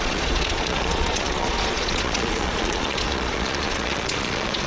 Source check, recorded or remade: remade